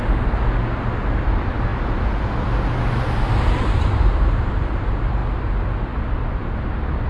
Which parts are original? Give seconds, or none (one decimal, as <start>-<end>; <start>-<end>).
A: 0.0-7.1